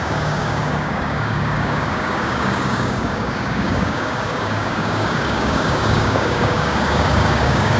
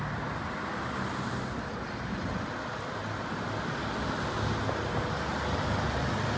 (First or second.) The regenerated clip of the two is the first